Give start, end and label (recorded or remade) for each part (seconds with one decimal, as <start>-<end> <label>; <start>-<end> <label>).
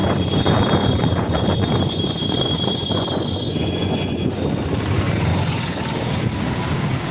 0.0-4.3 remade; 4.3-5.3 recorded; 5.3-5.8 remade; 5.8-7.1 recorded